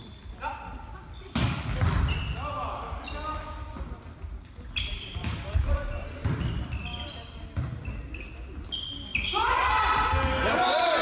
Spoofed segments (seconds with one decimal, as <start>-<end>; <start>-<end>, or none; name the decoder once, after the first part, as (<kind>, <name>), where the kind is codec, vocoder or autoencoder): none